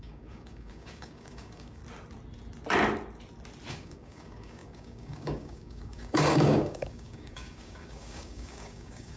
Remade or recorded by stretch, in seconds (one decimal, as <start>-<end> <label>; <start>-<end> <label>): 0.0-1.8 remade; 1.8-3.7 recorded; 3.7-9.2 remade